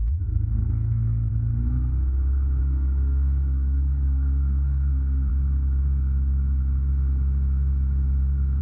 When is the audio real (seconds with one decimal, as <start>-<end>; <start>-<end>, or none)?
1.3-2.6; 5.3-8.6